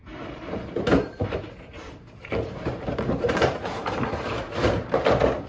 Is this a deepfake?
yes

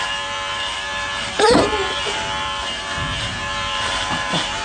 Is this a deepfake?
yes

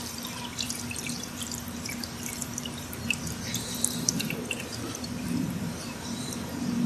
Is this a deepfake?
yes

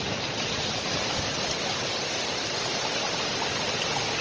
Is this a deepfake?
no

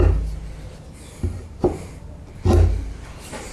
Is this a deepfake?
no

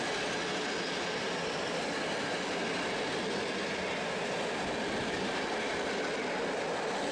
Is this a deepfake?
no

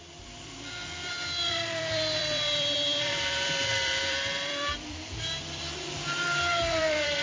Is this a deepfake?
yes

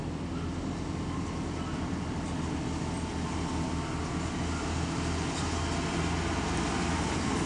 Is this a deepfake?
no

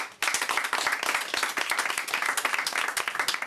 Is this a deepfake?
no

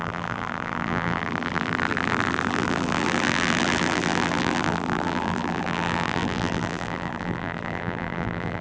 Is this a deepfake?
yes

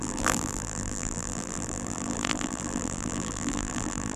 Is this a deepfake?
yes